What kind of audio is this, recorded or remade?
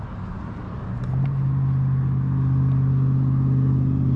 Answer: recorded